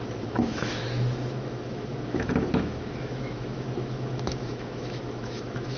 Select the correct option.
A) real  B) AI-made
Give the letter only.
B